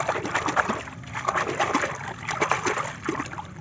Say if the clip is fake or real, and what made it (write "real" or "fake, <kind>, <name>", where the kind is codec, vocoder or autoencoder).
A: real